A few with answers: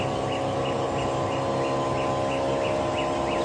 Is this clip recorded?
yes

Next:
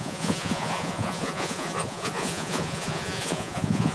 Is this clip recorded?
no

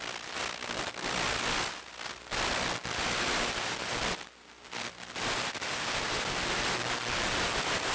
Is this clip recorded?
yes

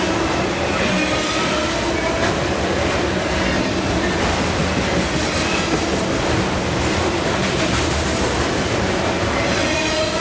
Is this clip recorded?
yes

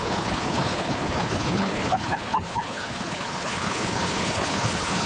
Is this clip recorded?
no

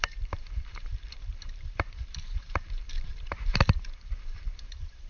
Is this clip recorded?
no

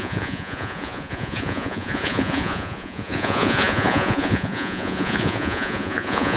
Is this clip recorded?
no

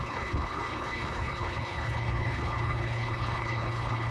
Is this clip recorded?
no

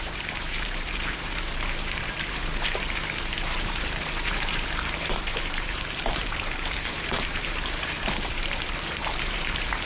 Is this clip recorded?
no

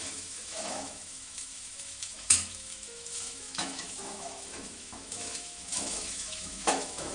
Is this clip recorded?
no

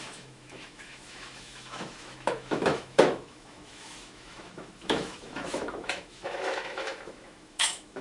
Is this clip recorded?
no